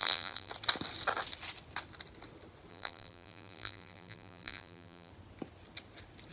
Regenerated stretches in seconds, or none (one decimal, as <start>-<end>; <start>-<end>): 0.0-0.5; 2.7-5.1